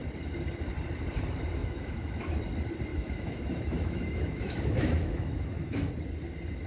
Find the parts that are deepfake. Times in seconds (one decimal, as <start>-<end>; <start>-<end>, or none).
1.6-2.3; 2.9-5.9